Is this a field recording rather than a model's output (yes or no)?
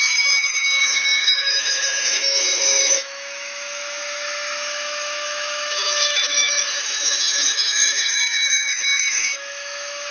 no